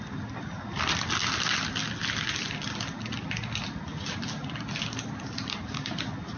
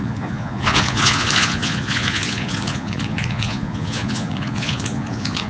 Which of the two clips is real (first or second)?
first